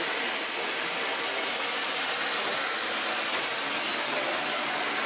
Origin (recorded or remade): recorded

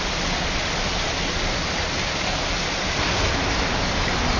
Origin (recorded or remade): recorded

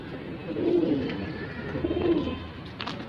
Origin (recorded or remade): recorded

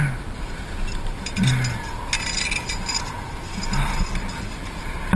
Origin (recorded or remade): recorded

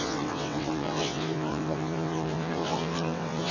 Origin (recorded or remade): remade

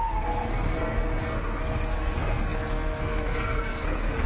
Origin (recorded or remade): remade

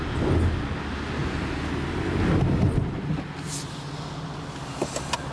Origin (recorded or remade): recorded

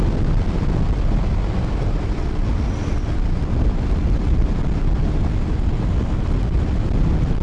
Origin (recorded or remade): recorded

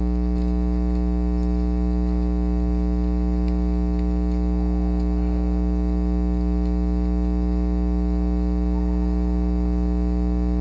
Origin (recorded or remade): recorded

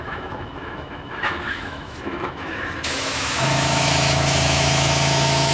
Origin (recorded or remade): remade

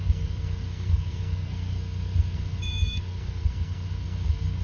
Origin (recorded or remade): remade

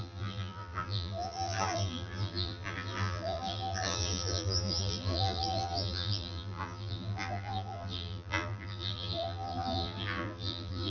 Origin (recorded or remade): remade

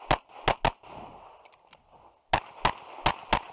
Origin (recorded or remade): recorded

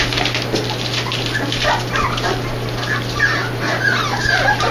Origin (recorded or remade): recorded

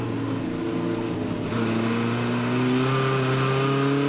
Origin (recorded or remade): recorded